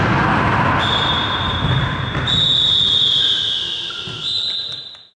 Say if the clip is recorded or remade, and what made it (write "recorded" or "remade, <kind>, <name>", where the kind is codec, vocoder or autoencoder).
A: recorded